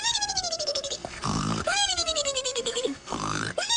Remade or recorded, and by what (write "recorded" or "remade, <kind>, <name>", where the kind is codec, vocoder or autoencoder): remade, codec, SNAC